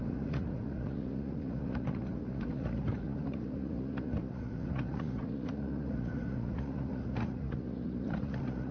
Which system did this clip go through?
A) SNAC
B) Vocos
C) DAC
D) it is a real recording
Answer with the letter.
B